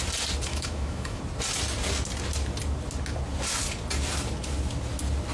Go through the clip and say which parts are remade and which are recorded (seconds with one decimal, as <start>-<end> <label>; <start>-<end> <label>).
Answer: 0.0-0.5 recorded; 0.5-1.2 remade; 1.2-5.3 recorded